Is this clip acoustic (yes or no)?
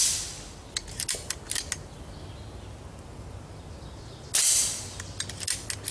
yes